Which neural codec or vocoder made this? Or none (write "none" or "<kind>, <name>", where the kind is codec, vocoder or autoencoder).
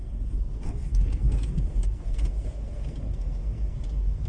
codec, SNAC